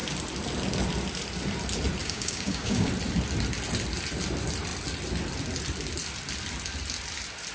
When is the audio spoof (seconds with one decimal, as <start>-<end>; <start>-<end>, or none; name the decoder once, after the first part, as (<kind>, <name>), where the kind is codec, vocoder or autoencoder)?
2.0-2.9 (codec, DAC)